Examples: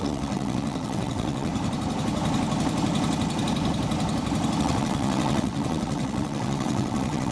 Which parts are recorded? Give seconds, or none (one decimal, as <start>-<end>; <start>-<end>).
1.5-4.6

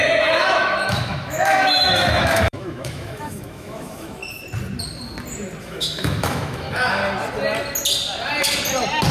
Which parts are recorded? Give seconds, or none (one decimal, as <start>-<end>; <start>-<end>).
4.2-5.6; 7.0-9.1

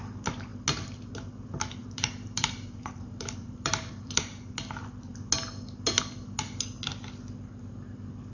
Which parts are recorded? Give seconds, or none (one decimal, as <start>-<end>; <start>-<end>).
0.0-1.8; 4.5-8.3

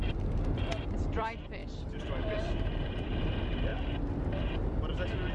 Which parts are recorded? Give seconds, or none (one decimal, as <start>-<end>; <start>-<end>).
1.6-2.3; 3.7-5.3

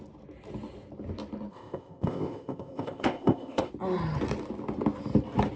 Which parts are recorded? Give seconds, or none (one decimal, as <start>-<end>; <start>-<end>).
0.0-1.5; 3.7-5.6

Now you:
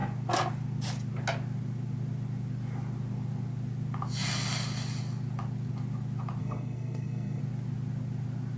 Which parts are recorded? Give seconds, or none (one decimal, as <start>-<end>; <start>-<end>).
0.0-6.4; 7.4-8.6